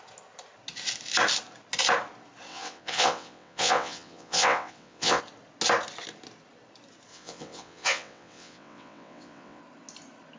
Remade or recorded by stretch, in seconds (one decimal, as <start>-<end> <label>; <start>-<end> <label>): 0.0-2.5 recorded; 2.5-5.2 remade; 5.2-7.1 recorded; 7.1-9.6 remade; 9.6-10.4 recorded